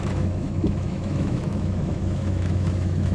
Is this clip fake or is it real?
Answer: fake